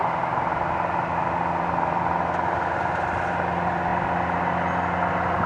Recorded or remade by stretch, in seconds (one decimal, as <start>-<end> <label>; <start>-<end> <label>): 0.0-5.5 recorded